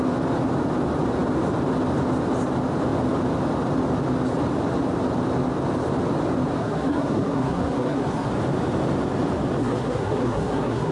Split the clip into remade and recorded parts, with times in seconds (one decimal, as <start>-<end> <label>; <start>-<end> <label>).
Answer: 0.0-6.6 recorded; 6.6-8.3 remade; 8.3-9.6 recorded; 9.6-10.9 remade